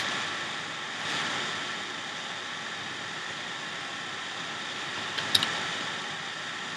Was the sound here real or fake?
real